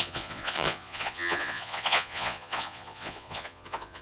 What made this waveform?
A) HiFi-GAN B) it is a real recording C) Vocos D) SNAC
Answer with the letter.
C